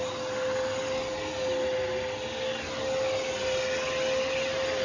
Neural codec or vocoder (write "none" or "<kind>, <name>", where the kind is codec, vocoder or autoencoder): none